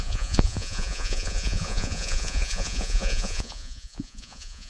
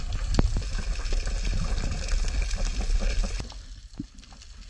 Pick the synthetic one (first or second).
first